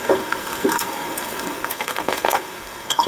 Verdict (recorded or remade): remade